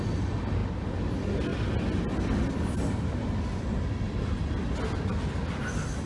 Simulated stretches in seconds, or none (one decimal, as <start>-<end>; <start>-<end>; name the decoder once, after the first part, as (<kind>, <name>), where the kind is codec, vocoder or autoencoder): none